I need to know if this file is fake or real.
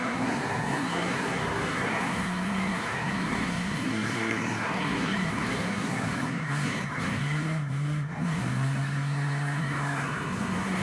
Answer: fake